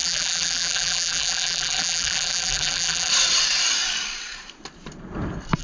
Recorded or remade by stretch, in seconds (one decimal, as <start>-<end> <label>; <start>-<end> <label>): 0.0-3.1 remade; 3.1-5.6 recorded